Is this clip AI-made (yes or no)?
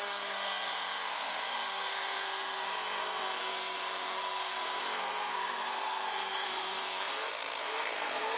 yes